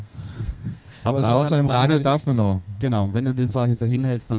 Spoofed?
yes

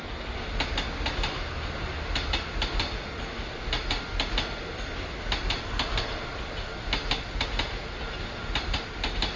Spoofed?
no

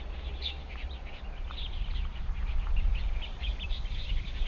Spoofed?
no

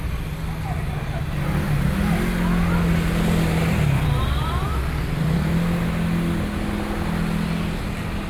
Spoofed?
no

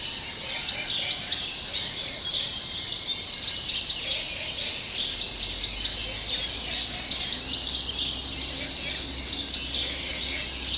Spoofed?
no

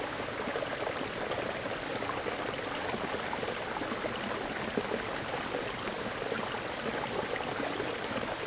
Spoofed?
no